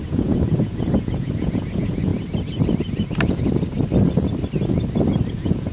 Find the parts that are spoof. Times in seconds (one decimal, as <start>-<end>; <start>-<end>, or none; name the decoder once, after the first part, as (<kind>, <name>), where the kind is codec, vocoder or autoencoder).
0.0-2.1 (vocoder, Vocos); 5.3-5.7